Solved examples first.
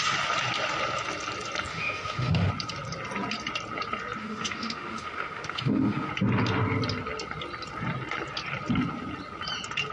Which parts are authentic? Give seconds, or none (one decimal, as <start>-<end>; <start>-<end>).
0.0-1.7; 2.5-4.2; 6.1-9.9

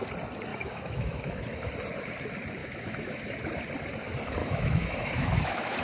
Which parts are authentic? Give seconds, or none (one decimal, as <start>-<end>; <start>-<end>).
0.0-0.5; 1.7-2.6; 3.4-4.4

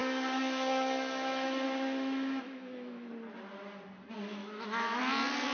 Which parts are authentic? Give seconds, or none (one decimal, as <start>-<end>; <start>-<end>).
3.1-4.4; 5.0-5.5

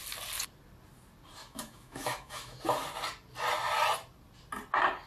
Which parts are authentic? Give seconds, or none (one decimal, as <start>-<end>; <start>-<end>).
0.0-1.4; 2.6-5.1